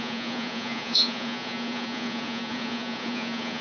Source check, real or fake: fake